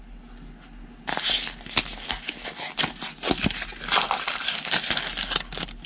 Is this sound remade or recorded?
recorded